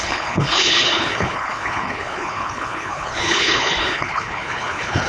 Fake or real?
fake